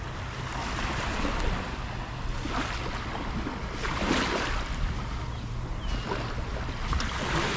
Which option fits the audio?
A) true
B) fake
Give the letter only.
A